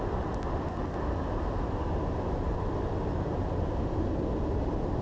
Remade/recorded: recorded